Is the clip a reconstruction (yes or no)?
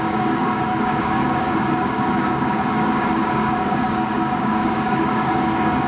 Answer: yes